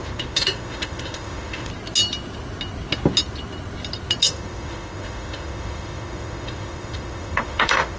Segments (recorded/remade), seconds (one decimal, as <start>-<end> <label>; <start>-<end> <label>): 0.0-1.7 remade; 1.7-4.2 recorded; 4.2-8.0 remade